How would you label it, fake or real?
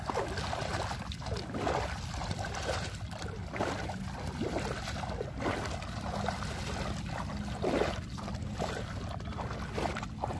real